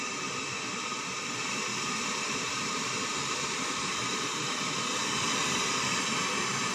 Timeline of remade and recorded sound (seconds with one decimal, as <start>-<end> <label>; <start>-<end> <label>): 0.0-1.7 remade; 1.7-2.6 recorded; 2.6-6.7 remade